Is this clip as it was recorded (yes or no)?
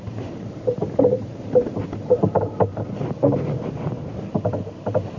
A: yes